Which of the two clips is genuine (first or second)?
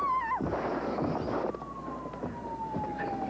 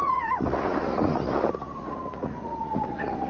first